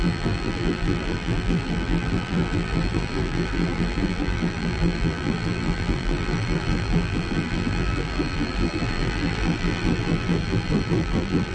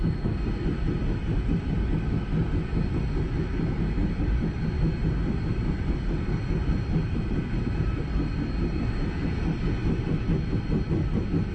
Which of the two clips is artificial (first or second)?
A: first